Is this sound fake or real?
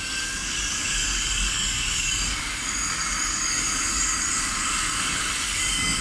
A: fake